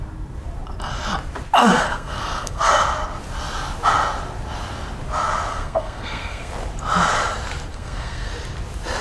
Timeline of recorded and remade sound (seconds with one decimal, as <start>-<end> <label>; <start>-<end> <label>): 0.0-1.6 recorded; 1.6-2.7 remade; 2.7-5.5 recorded; 5.5-6.5 remade; 6.5-7.7 recorded; 7.7-8.3 remade; 8.3-9.0 recorded